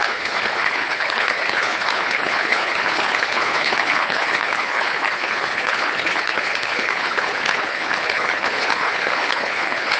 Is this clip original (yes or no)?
no